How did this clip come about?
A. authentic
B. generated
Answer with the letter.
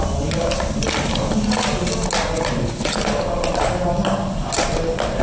A